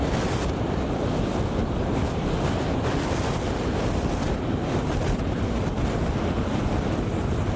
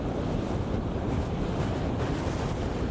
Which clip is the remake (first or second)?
second